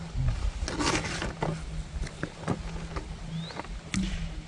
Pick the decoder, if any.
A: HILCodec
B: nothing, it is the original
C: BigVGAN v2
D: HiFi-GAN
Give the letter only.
B